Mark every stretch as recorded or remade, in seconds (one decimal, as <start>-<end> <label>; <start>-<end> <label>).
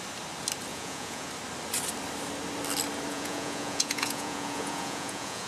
0.0-0.7 recorded; 0.7-1.3 remade; 1.3-3.1 recorded; 3.1-5.5 remade